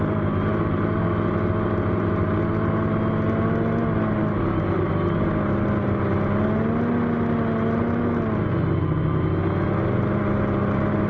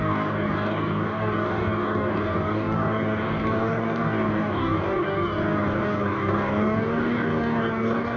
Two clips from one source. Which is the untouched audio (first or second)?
first